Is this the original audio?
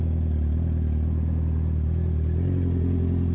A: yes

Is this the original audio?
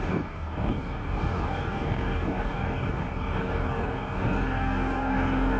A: no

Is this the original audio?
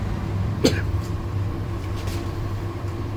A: no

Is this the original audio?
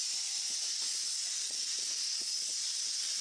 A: yes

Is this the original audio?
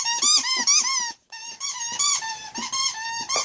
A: yes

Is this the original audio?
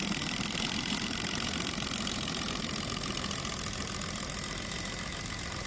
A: yes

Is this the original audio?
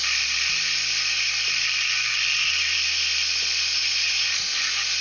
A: yes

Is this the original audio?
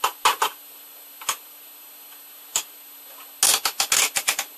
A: yes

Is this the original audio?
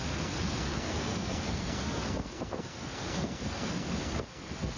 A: no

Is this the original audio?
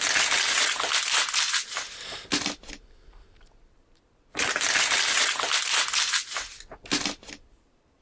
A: yes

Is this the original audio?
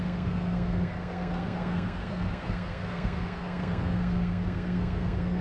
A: no